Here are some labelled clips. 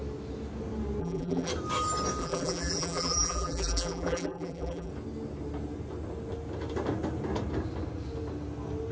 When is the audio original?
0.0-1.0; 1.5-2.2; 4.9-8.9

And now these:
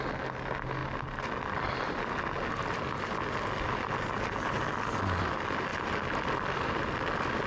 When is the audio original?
0.0-7.5

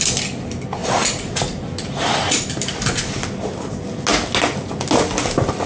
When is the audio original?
0.0-5.7